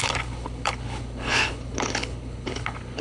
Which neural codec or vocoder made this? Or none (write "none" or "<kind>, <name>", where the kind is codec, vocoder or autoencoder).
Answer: codec, HILCodec